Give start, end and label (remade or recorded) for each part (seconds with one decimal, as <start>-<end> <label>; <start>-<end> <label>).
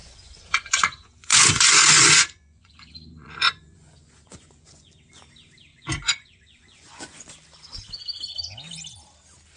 0.0-4.9 remade; 4.9-5.7 recorded; 5.7-7.3 remade; 7.3-9.6 recorded